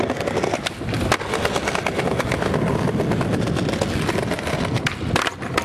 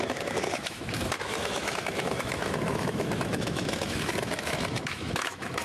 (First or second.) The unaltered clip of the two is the first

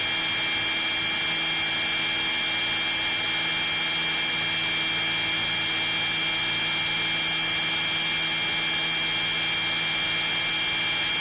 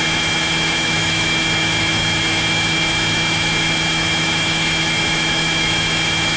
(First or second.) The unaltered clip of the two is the first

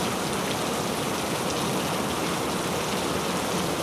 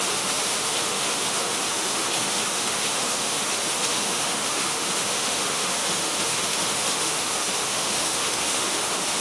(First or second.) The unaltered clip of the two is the first